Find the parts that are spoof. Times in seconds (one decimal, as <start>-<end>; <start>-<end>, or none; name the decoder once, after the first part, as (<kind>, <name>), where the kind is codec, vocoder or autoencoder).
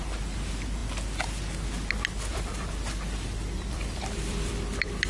2.3-5.1 (vocoder, BigVGAN v2)